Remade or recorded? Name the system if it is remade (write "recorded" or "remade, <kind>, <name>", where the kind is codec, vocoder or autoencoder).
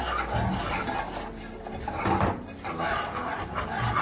recorded